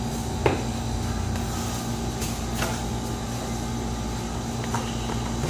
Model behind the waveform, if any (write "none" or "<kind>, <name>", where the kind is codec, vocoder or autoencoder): none